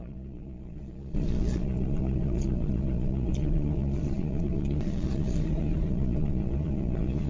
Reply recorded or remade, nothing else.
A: remade